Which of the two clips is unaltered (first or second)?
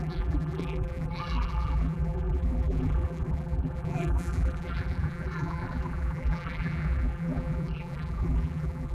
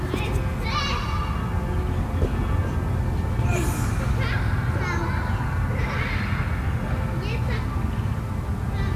second